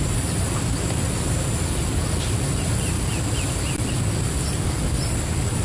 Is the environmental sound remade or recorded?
recorded